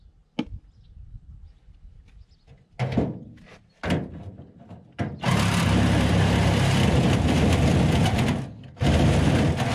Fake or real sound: real